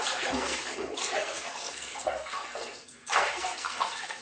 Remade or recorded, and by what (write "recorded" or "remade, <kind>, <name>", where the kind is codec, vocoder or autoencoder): remade, codec, SNAC